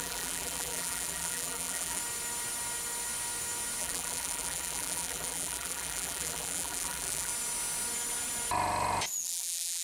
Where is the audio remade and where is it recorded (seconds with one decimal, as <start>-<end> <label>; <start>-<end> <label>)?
0.0-2.0 remade; 2.0-3.8 recorded; 3.8-7.3 remade; 7.3-9.2 recorded; 9.2-9.8 remade